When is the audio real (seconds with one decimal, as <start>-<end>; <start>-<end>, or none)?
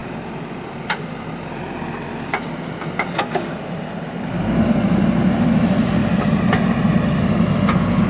0.0-8.1